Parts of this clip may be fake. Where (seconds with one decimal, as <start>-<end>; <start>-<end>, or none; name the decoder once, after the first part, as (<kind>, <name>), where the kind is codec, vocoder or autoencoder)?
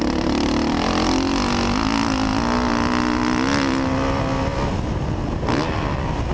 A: none